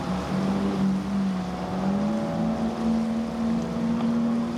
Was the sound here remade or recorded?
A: recorded